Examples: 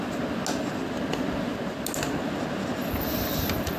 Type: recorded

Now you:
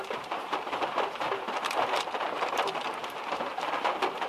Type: remade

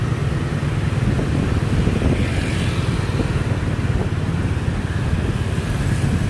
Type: recorded